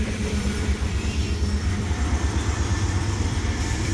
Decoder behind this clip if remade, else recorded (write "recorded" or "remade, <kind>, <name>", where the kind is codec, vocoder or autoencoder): remade, vocoder, BigVGAN v2